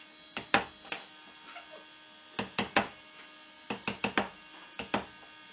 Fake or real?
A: real